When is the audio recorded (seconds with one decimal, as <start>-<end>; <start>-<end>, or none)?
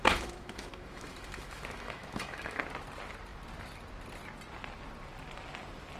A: 2.6-6.0